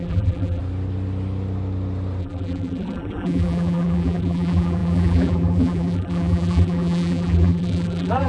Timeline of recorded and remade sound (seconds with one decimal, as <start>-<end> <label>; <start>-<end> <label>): 0.0-0.6 remade; 0.6-2.2 recorded; 2.2-8.3 remade